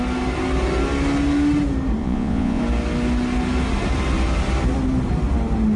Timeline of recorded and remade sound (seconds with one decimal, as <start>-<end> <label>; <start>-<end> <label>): 0.0-2.0 recorded; 2.0-2.6 remade; 2.6-5.8 recorded